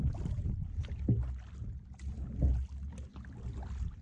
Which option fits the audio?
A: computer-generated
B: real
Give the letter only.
B